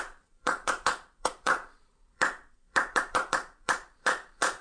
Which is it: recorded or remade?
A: remade